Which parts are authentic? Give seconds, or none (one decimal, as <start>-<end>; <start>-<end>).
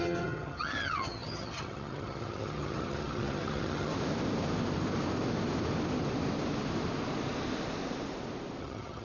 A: 3.9-8.6